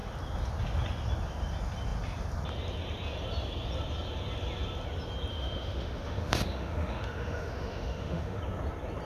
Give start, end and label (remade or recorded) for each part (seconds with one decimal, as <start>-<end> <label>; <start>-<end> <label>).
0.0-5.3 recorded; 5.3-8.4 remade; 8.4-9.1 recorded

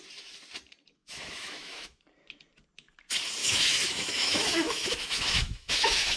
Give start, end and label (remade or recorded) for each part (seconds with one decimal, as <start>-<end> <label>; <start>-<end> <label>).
0.0-1.0 recorded; 1.0-2.0 remade; 2.0-3.4 recorded; 3.4-6.2 remade

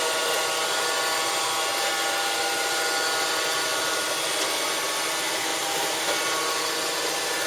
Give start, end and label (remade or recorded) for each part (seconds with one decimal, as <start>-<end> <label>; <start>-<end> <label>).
0.0-7.5 recorded

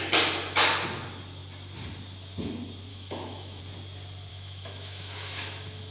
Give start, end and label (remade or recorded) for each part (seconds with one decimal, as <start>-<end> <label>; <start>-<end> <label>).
0.0-2.9 recorded; 2.9-3.6 remade; 3.6-4.3 recorded; 4.3-5.9 remade

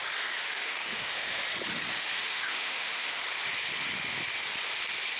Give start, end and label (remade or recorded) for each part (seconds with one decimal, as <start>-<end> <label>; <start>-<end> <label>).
0.0-0.4 recorded; 0.4-1.4 remade; 1.4-1.9 recorded; 1.9-3.2 remade; 3.2-5.2 recorded

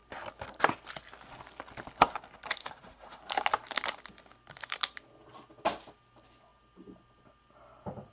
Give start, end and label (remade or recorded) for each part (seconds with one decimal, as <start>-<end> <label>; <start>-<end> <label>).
0.0-2.6 recorded; 2.6-3.2 remade; 3.2-8.1 recorded

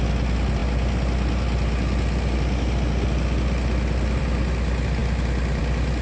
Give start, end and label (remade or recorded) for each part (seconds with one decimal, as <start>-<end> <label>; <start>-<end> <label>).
0.0-6.0 recorded

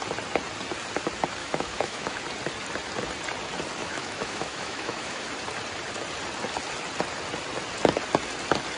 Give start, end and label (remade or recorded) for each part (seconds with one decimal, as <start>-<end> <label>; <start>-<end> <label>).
0.0-1.4 recorded; 1.4-2.2 remade; 2.2-3.8 recorded; 3.8-5.2 remade; 5.2-8.8 recorded